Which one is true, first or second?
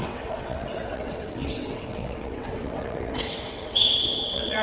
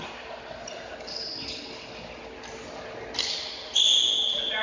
second